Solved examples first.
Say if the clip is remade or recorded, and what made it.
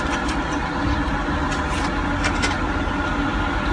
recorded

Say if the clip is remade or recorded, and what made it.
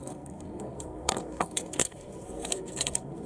remade, codec, SNAC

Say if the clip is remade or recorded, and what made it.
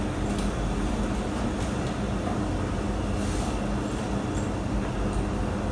recorded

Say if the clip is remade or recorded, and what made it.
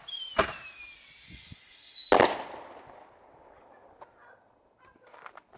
recorded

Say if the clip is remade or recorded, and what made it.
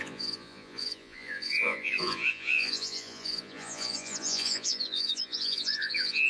remade, vocoder, Vocos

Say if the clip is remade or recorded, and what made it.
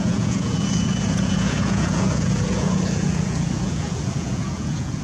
remade, vocoder, Vocos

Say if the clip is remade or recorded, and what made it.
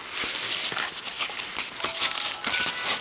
recorded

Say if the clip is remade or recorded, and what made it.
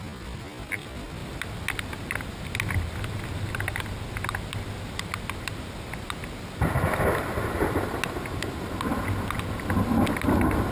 recorded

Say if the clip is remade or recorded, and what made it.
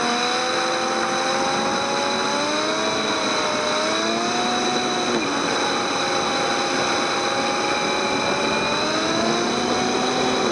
recorded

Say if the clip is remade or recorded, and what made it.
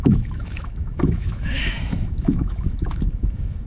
remade, autoencoder, DAC-VAE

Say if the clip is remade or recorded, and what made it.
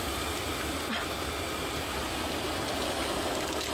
recorded